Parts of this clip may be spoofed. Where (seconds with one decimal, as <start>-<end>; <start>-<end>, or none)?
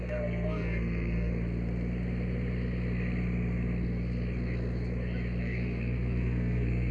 0.0-1.3; 5.4-6.9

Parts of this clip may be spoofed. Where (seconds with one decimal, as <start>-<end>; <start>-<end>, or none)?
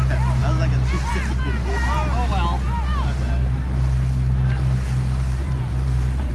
5.4-6.3